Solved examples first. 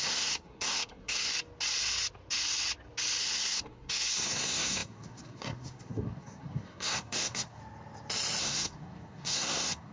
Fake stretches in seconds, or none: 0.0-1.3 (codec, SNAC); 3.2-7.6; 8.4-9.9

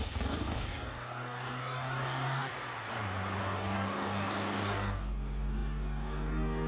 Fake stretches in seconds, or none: 0.0-2.5 (codec, DAC); 3.4-6.7